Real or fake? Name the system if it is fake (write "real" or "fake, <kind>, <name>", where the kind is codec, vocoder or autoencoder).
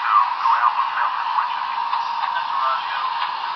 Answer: real